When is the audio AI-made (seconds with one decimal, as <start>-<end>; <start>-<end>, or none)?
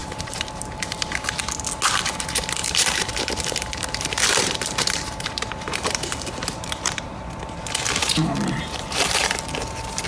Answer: 0.0-1.4; 2.6-7.4; 8.0-9.5